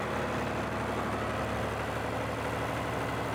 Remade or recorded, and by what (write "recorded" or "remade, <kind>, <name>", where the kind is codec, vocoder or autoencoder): recorded